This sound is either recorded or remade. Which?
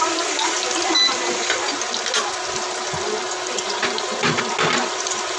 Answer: recorded